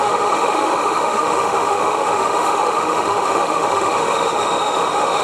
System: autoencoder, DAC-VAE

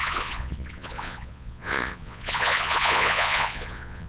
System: vocoder, Vocos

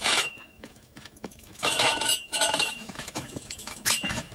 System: autoencoder, DAC-VAE